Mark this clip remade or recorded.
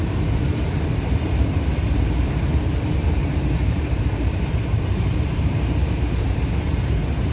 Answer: remade